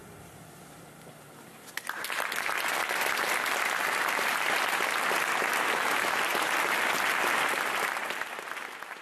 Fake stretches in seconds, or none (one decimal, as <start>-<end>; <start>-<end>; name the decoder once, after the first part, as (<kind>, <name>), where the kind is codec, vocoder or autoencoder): 0.0-4.5 (vocoder, BigVGAN v2); 6.3-8.0